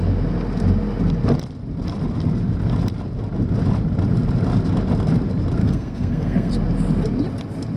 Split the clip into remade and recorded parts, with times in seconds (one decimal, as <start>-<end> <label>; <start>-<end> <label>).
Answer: 0.0-5.6 recorded; 5.6-6.5 remade; 6.5-7.8 recorded